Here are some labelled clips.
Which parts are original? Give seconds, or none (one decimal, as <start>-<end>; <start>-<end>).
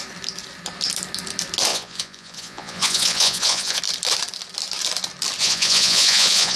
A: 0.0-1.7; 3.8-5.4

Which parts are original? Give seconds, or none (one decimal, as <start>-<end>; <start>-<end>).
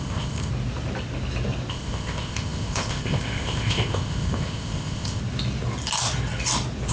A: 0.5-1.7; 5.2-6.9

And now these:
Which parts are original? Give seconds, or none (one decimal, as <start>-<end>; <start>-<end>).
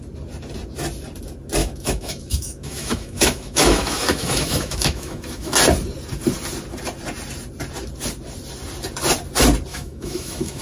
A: 0.0-1.6; 5.5-9.7